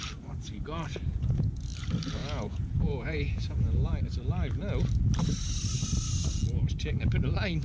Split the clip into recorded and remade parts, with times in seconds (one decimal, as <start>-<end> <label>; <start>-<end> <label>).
0.0-1.1 recorded; 1.1-1.6 remade; 1.6-2.2 recorded; 2.2-3.9 remade; 3.9-7.6 recorded